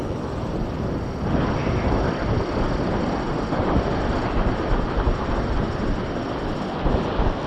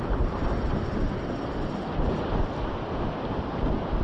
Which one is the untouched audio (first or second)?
first